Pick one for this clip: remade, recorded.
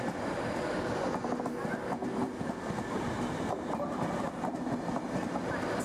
recorded